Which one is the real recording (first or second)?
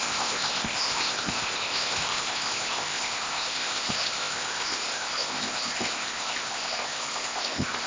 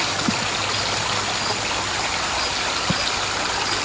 second